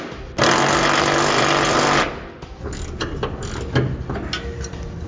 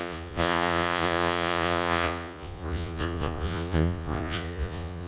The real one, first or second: first